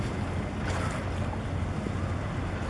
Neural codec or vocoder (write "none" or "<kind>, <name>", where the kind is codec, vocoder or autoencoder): none